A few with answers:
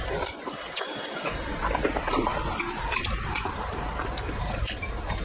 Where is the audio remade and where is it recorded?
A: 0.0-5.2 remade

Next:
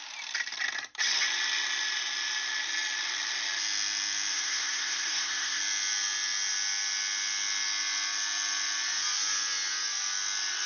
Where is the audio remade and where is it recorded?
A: 0.0-4.3 recorded; 4.3-5.6 remade; 5.6-10.7 recorded

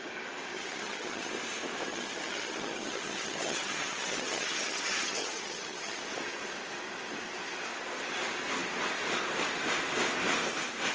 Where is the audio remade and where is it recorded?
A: 0.0-0.5 recorded; 0.5-1.3 remade; 1.3-1.9 recorded; 1.9-6.0 remade; 6.0-10.9 recorded

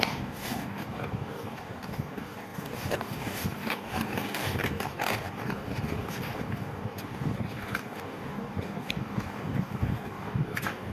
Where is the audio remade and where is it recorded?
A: 0.0-10.9 remade

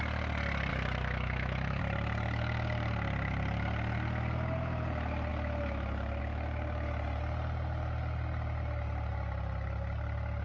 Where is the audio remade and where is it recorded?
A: 0.0-0.7 recorded; 0.7-1.8 remade; 1.8-10.4 recorded